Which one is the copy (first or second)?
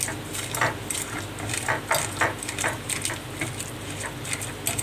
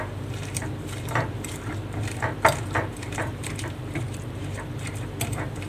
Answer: second